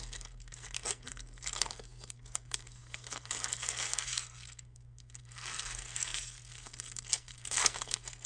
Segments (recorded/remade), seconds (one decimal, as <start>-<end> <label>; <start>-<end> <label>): 0.0-8.3 remade